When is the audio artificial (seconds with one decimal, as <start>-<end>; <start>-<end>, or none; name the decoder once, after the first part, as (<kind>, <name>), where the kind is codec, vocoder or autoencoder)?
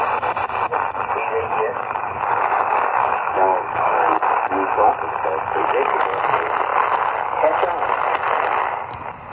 1.2-4.9 (codec, DAC); 5.7-6.2